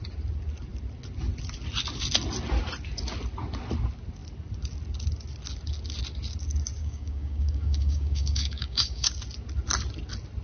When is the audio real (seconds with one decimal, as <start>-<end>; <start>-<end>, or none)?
0.0-6.8; 9.1-10.4